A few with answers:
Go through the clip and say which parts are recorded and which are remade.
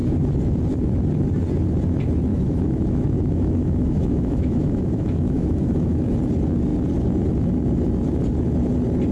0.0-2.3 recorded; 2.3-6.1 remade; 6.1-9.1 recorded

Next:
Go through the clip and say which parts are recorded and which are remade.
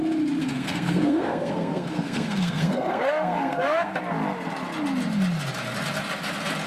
0.0-0.4 recorded; 0.4-4.0 remade; 4.0-6.7 recorded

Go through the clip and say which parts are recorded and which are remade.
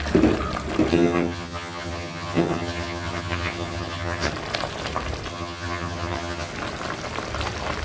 0.0-0.9 recorded; 0.9-4.3 remade; 4.3-5.3 recorded; 5.3-6.5 remade; 6.5-7.8 recorded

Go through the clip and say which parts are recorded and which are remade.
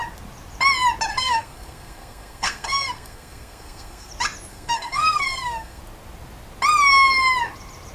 0.0-1.1 recorded; 1.1-4.1 remade; 4.1-4.5 recorded; 4.5-5.8 remade; 5.8-7.9 recorded